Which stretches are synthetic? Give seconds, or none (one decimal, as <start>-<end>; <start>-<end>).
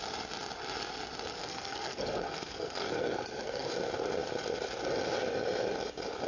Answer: 1.4-3.7